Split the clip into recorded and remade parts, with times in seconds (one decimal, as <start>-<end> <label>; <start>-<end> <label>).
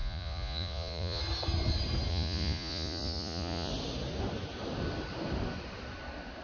0.0-1.2 remade; 1.2-2.1 recorded; 2.1-3.7 remade; 3.7-6.4 recorded